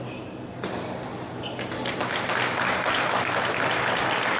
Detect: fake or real real